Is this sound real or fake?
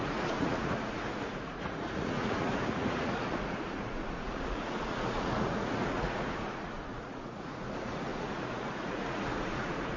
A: fake